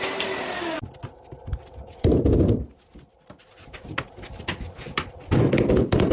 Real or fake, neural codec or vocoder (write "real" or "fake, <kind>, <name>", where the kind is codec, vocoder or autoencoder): real